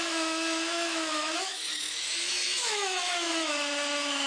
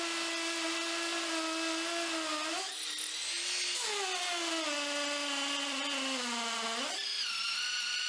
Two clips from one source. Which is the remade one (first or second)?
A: first